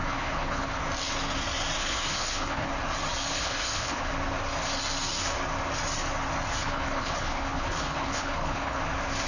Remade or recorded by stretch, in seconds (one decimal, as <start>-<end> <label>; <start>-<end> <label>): 0.0-0.8 remade; 0.8-1.8 recorded; 1.8-2.7 remade; 2.7-3.3 recorded; 3.3-4.1 remade; 4.1-6.6 recorded; 6.6-8.8 remade; 8.8-9.3 recorded